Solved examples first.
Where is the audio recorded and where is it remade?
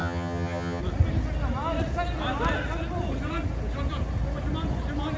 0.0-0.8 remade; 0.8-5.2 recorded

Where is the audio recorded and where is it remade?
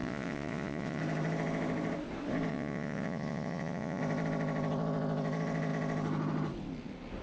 0.0-1.0 remade; 1.0-2.5 recorded; 2.5-4.0 remade; 4.0-7.2 recorded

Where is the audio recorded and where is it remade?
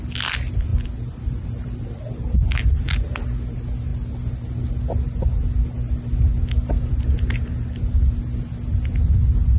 0.0-9.6 recorded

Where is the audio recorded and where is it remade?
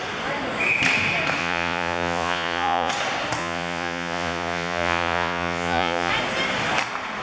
0.0-1.4 recorded; 1.4-2.9 remade; 2.9-3.4 recorded; 3.4-6.1 remade; 6.1-7.2 recorded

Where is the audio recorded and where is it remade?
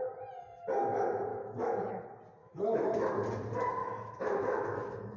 0.0-1.3 recorded; 1.3-1.9 remade; 1.9-2.4 recorded; 2.4-3.1 remade; 3.1-3.8 recorded; 3.8-4.8 remade; 4.8-5.2 recorded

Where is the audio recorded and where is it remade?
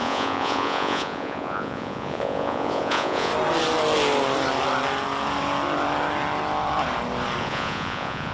0.0-3.3 remade; 3.3-7.4 recorded; 7.4-8.3 remade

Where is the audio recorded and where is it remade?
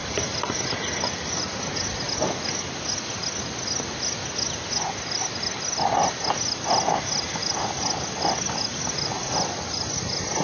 0.0-1.6 remade; 1.6-10.4 recorded